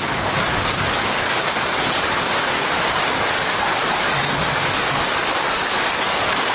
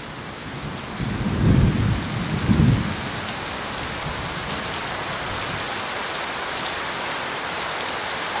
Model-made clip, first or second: first